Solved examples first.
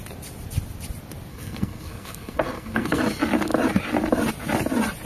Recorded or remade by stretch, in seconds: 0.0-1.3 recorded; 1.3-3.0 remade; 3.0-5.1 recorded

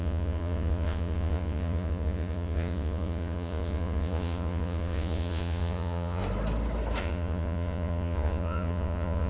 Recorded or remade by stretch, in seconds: 0.0-6.2 remade; 6.2-7.0 recorded; 7.0-9.3 remade

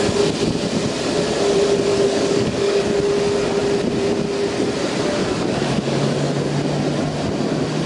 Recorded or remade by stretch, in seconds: 0.0-1.9 recorded; 1.9-2.8 remade; 2.8-5.2 recorded; 5.2-6.3 remade; 6.3-7.9 recorded

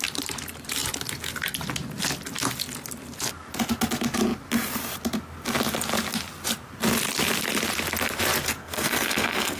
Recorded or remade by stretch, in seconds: 0.0-8.6 recorded; 8.6-9.6 remade

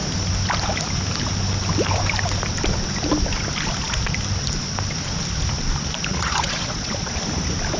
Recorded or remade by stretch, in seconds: 0.0-6.1 recorded; 6.1-7.2 remade; 7.2-7.8 recorded

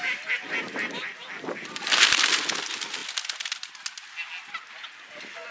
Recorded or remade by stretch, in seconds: 0.0-5.5 recorded